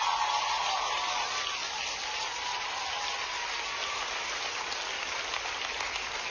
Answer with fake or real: real